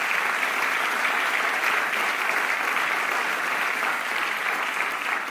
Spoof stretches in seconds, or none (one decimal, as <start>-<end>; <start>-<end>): 0.0-4.4